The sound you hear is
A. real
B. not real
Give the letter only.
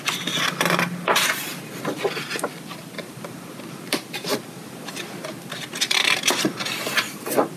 A